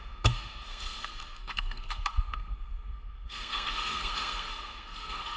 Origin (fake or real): fake